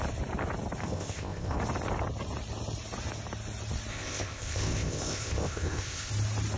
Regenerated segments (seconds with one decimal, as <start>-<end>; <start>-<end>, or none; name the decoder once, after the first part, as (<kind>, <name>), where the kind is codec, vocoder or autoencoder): 0.8-1.6 (codec, ZipCodec); 3.9-6.1